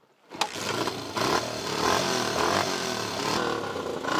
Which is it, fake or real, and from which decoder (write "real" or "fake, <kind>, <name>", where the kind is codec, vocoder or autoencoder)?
real